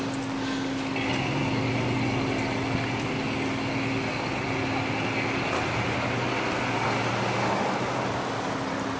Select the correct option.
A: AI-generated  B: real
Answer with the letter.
B